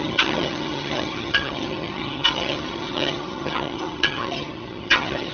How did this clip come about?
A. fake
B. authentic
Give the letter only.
A